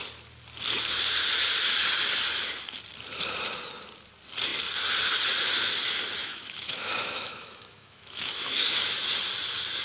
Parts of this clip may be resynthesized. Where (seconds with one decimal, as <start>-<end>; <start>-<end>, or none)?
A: 6.2-8.6